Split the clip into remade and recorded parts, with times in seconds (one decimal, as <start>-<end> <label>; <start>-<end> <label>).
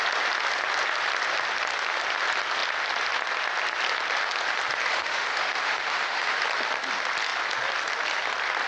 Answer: 0.0-4.9 recorded; 4.9-6.4 remade; 6.4-8.7 recorded